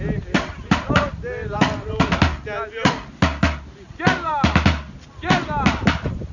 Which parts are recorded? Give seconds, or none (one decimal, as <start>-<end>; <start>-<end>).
0.0-6.3